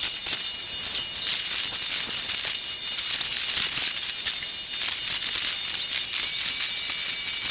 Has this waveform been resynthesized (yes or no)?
no